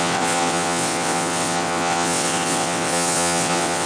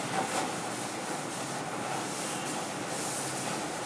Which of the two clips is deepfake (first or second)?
first